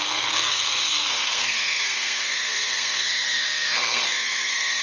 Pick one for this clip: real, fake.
fake